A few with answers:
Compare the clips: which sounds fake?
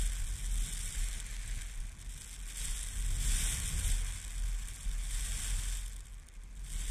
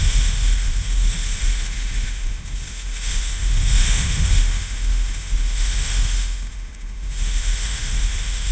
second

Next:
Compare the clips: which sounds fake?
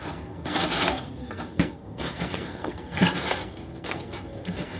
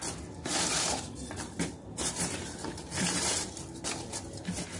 first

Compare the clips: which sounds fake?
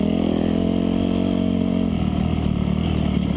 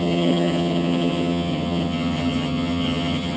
second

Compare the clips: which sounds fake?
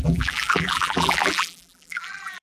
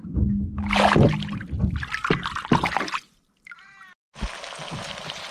first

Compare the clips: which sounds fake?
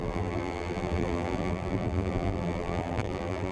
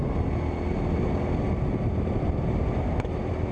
first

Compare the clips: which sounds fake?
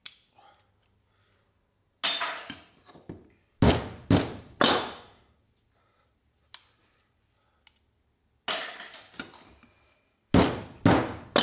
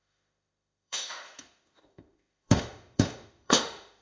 second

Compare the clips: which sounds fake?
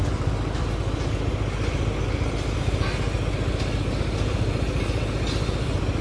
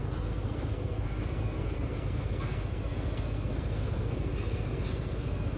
second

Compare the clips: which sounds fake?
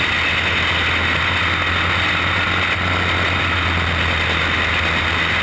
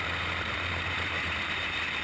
second